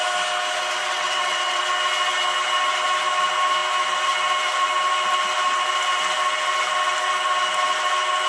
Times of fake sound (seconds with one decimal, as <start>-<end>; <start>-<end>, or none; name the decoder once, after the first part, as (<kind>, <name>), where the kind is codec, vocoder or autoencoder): 0.8-1.6 (vocoder, WaveNeXt)